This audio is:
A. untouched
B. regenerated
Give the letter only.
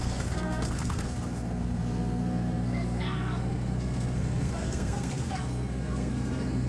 B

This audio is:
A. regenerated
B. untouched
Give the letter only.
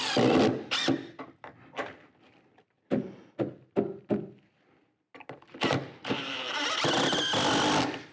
B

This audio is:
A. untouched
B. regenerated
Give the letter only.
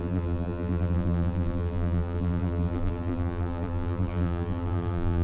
B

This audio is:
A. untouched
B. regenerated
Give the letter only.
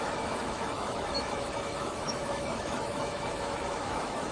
B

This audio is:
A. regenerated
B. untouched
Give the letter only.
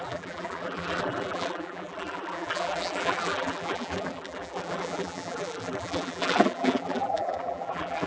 A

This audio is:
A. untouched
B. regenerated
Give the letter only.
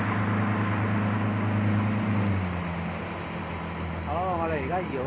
A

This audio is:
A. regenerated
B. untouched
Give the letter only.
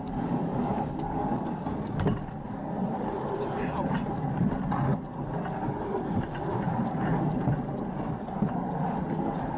B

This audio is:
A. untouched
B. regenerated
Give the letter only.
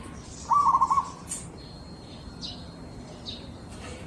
B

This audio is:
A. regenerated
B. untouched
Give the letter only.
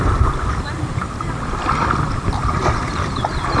B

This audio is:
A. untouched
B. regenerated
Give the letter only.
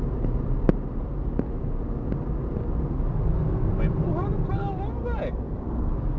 A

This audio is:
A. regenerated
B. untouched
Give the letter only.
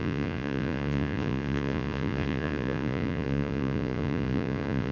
A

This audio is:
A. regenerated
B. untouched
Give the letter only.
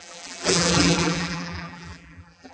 A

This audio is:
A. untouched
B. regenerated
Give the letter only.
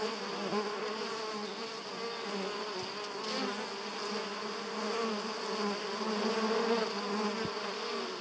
A